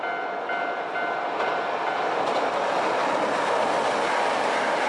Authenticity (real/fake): real